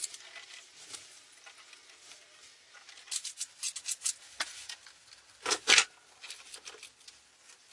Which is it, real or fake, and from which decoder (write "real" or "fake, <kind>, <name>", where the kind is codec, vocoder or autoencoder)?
real